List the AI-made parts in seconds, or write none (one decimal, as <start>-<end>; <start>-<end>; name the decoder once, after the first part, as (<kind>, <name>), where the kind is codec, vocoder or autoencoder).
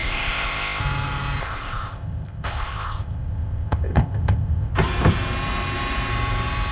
0.0-0.8 (codec, ZipCodec); 1.4-4.7